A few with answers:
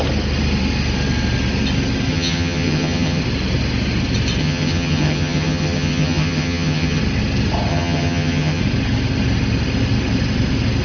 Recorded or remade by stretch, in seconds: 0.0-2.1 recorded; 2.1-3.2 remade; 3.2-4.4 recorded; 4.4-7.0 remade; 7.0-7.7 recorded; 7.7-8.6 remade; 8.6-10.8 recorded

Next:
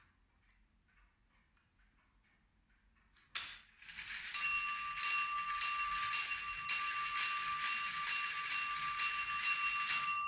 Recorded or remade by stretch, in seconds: 0.0-10.3 recorded

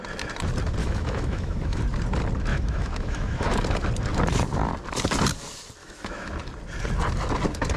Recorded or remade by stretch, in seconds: 0.0-0.8 recorded; 0.8-1.8 remade; 1.8-2.5 recorded; 2.5-3.5 remade; 3.5-5.8 recorded; 5.8-6.3 remade; 6.3-7.8 recorded